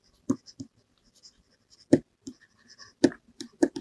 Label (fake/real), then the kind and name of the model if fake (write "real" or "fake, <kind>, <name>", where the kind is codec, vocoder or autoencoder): fake, vocoder, BigVGAN v2